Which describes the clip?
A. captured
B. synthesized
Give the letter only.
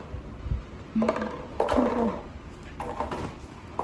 A